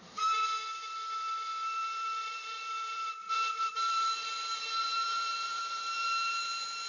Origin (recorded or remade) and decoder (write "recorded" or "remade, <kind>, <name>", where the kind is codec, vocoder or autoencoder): remade, vocoder, BigVGAN v2